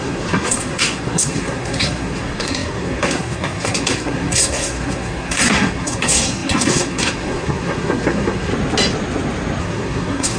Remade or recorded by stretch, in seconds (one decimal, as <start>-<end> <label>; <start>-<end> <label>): 0.0-8.5 remade; 8.5-9.6 recorded; 9.6-10.4 remade

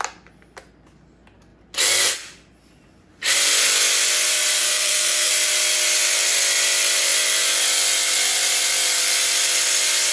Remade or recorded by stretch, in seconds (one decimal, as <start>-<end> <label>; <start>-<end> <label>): 0.0-4.6 recorded; 4.6-5.3 remade; 5.3-10.1 recorded

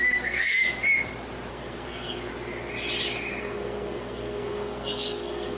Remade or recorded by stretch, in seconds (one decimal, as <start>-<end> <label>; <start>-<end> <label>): 0.0-0.6 remade; 0.6-1.5 recorded; 1.5-2.3 remade; 2.3-3.4 recorded; 3.4-5.6 remade

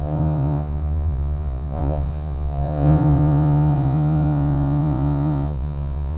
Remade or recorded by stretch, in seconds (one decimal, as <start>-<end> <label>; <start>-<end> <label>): 0.0-6.2 remade

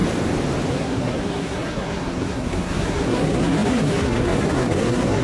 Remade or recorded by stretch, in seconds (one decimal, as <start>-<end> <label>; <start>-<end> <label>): 0.0-0.7 recorded; 0.7-5.2 remade